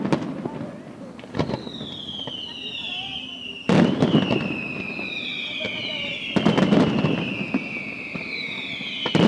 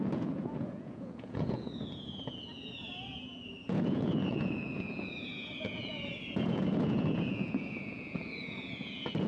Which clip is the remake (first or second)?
second